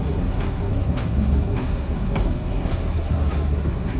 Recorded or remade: remade